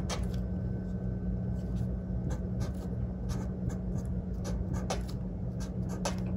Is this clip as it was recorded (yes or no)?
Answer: yes